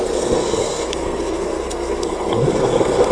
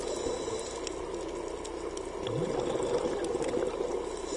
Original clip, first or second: second